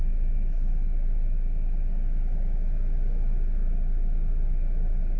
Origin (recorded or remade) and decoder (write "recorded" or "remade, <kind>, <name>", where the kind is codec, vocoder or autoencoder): recorded